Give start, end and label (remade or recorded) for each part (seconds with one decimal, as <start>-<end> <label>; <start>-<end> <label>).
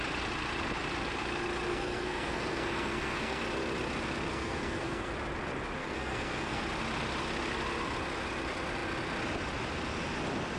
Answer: 0.0-1.7 recorded; 1.7-3.4 remade; 3.4-4.3 recorded; 4.3-5.1 remade; 5.1-5.8 recorded; 5.8-6.6 remade; 6.6-10.6 recorded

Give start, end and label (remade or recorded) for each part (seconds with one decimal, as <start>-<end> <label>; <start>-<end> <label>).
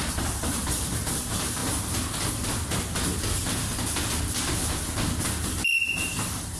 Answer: 0.0-1.6 remade; 1.6-5.2 recorded; 5.2-6.6 remade